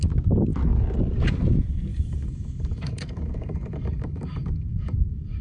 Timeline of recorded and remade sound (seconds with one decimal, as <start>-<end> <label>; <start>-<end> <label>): 0.0-1.9 recorded; 1.9-5.4 remade